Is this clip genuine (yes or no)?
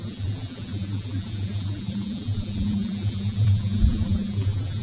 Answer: no